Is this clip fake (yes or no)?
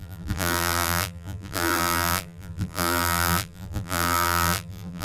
yes